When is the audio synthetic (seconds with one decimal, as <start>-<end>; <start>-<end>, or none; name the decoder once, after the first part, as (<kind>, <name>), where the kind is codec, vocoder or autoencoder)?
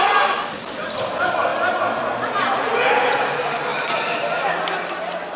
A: none